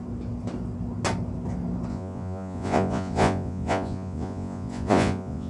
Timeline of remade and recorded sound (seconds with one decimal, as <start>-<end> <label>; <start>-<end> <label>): 0.0-1.9 recorded; 1.9-5.5 remade